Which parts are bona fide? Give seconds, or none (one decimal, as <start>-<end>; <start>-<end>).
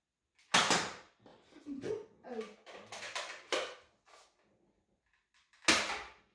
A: 0.0-6.3